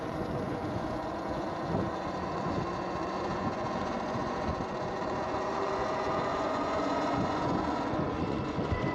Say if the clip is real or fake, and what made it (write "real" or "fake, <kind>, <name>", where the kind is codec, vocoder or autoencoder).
fake, vocoder, Vocos